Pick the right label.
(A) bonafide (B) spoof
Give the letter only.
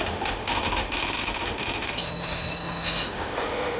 B